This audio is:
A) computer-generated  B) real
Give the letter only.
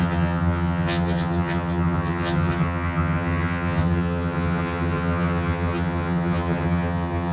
A